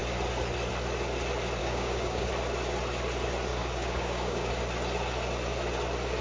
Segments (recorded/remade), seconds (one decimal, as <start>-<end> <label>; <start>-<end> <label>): 0.0-1.6 recorded; 1.6-2.3 remade; 2.3-3.5 recorded; 3.5-4.5 remade; 4.5-6.2 recorded